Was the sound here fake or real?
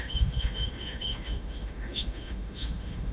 fake